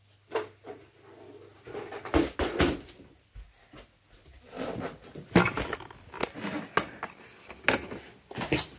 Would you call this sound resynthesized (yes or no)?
no